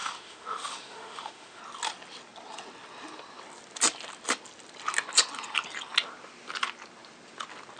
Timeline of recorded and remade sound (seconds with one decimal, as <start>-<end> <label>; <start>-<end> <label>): 0.0-1.6 remade; 1.6-7.8 recorded

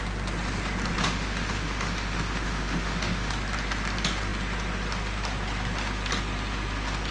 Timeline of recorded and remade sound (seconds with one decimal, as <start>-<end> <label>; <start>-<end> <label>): 0.0-1.0 recorded; 1.0-3.3 remade; 3.3-7.1 recorded

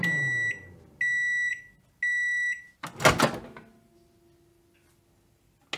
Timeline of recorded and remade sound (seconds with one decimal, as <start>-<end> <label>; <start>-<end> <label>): 0.0-5.8 recorded